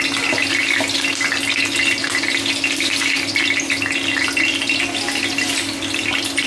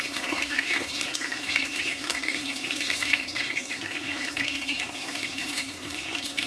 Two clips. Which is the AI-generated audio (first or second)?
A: second